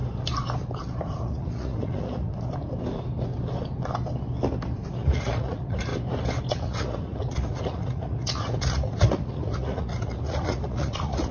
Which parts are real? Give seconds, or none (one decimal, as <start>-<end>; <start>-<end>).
0.0-1.2; 2.3-4.9; 5.9-6.5